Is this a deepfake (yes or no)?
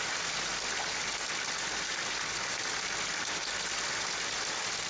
no